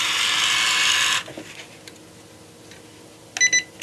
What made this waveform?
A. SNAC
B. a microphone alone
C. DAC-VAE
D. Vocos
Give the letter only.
B